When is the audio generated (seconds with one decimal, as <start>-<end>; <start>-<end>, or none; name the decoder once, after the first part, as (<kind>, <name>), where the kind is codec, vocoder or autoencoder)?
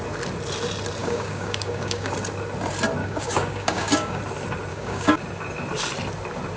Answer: 1.0-2.1 (codec, DAC); 3.0-4.2; 4.7-5.2